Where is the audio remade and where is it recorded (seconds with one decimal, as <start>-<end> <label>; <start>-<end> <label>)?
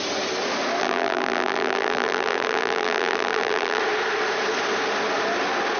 0.0-0.8 recorded; 0.8-3.8 remade; 3.8-5.8 recorded